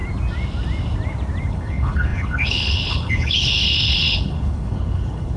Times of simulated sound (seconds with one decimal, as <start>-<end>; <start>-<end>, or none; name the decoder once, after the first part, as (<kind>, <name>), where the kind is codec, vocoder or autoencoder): 1.5-5.4 (codec, HILCodec)